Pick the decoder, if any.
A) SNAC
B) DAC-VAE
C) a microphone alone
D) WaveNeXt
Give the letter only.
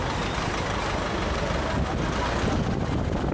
C